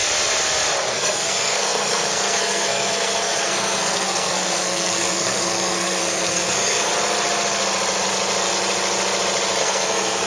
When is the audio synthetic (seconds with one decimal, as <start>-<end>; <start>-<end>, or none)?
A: 0.9-6.9; 9.6-10.3